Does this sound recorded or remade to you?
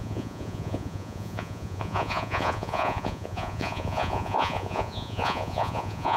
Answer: remade